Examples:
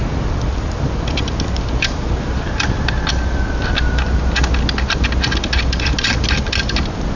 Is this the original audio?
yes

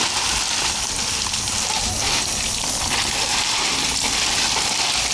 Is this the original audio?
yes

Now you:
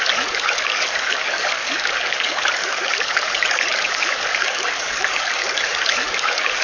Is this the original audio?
no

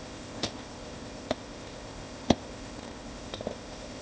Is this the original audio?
no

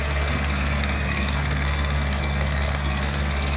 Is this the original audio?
no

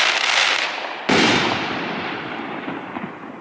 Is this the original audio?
no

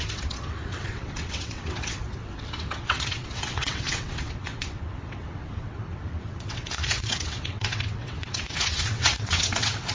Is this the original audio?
no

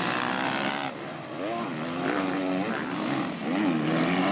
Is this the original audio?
yes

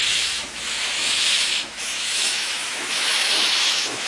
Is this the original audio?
no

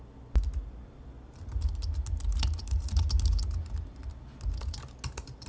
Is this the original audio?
yes